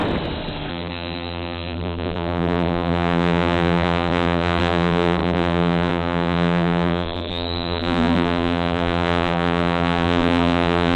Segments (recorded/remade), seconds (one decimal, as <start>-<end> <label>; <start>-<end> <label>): 0.0-0.7 recorded; 0.7-11.0 remade